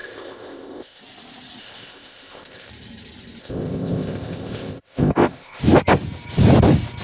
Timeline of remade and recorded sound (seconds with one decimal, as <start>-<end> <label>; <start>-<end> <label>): 0.0-1.0 remade; 1.0-1.6 recorded; 1.6-2.7 remade; 2.7-3.4 recorded; 3.4-5.6 remade; 5.6-7.0 recorded